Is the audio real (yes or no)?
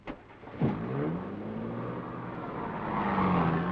yes